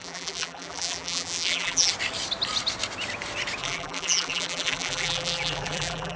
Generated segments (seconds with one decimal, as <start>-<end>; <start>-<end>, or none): 0.0-1.9; 3.6-6.2